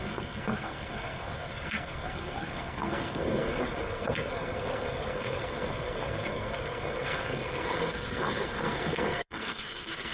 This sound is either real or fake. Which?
fake